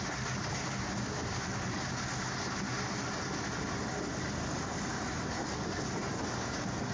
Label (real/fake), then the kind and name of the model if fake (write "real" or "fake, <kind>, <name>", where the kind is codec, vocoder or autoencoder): real